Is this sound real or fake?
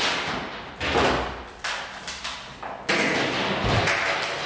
real